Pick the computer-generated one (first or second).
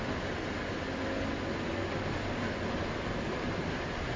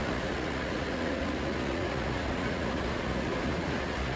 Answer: second